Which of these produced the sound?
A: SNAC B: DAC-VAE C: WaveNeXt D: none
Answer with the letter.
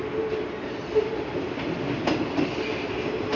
D